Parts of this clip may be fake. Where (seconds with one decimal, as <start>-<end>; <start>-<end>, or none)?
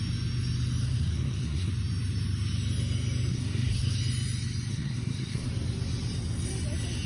0.8-1.7; 3.3-4.0; 4.7-5.5